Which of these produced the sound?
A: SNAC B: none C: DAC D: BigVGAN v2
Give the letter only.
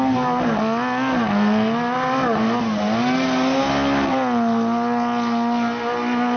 B